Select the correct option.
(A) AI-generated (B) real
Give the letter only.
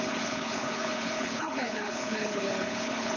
A